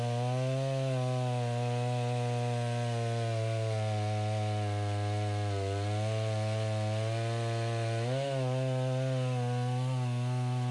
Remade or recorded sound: recorded